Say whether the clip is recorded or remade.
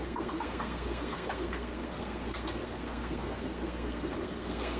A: remade